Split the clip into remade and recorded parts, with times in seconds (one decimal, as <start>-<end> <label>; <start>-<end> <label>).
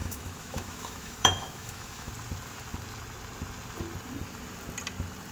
0.0-2.1 remade; 2.1-5.3 recorded